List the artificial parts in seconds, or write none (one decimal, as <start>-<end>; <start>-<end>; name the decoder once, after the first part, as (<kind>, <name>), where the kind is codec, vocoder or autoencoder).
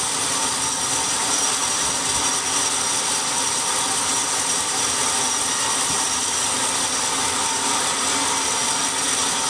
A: none